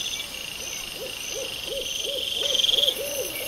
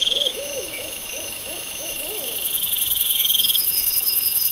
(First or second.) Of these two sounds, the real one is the first